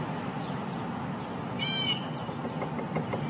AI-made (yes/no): no